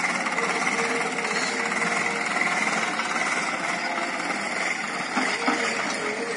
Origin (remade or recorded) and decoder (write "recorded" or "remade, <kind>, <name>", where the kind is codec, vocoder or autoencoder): recorded